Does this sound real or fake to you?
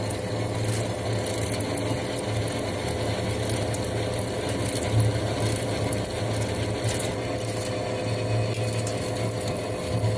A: real